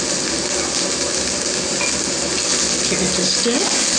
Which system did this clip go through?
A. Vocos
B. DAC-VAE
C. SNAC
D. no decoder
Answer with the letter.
D